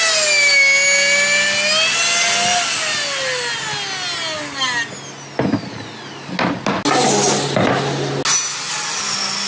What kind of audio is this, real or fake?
real